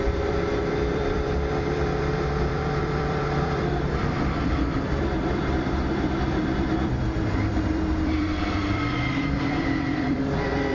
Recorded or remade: remade